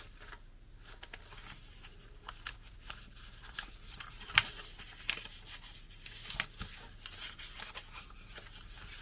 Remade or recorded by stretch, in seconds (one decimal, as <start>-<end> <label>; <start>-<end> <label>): 0.0-3.4 recorded; 3.4-4.3 remade; 4.3-9.0 recorded